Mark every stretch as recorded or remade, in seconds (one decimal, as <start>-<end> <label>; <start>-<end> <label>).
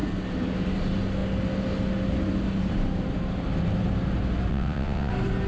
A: 0.0-4.5 recorded; 4.5-5.1 remade; 5.1-5.5 recorded